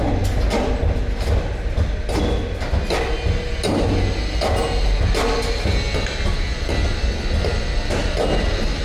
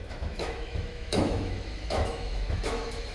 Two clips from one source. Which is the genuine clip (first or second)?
first